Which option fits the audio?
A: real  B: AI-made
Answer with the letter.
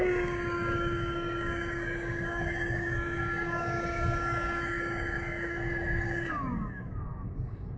B